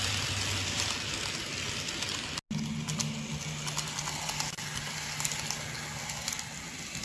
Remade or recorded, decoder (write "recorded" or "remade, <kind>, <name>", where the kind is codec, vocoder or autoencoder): recorded